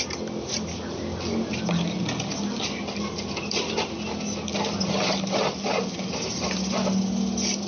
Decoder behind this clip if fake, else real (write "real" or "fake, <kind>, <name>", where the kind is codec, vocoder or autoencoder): real